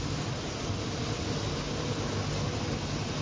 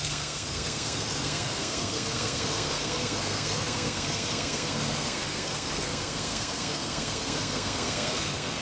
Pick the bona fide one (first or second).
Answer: first